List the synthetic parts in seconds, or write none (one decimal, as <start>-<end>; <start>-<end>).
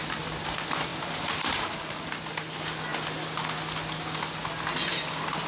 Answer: none